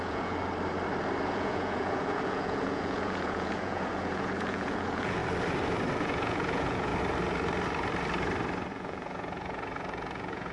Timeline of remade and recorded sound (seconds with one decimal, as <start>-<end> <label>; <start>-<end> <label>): 0.0-0.4 remade; 0.4-1.3 recorded; 1.3-5.2 remade; 5.2-6.0 recorded; 6.0-6.9 remade; 6.9-8.7 recorded; 8.7-10.5 remade